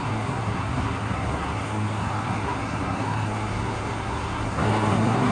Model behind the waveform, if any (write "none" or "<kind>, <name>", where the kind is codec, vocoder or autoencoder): codec, SNAC